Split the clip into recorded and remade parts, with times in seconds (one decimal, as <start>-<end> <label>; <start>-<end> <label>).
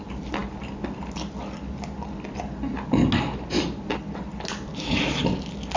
0.0-5.8 recorded